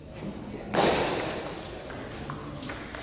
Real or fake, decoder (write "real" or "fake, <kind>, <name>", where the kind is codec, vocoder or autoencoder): real